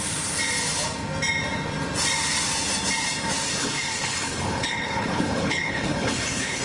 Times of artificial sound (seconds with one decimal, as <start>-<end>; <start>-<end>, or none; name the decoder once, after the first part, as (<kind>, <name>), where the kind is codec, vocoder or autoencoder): 3.5-6.6 (codec, HILCodec)